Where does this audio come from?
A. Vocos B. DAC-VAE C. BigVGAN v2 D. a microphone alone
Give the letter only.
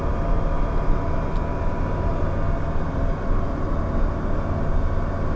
D